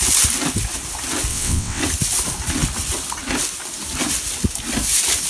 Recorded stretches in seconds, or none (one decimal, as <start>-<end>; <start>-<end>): 0.0-1.3; 1.8-5.3